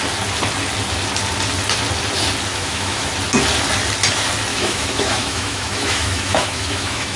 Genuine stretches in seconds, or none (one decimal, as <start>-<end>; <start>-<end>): 0.0-2.5; 3.1-4.5